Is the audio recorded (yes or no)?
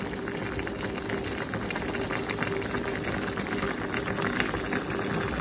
yes